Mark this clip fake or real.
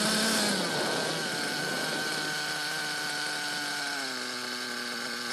real